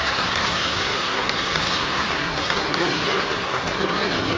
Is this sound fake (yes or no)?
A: yes